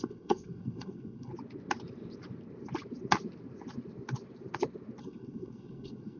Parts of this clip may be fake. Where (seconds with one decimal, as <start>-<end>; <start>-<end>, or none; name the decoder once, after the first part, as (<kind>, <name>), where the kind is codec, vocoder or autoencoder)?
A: 0.0-1.3 (codec, SNAC); 5.0-6.2